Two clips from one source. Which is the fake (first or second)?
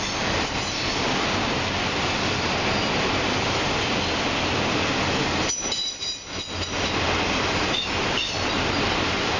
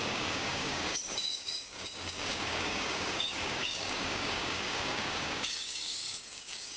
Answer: second